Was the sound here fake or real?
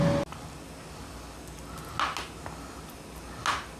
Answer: real